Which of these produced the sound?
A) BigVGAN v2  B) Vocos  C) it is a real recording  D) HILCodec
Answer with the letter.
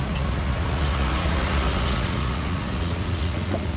B